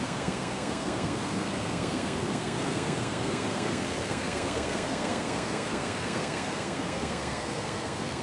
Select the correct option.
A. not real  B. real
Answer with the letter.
A